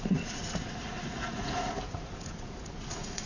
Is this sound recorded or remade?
remade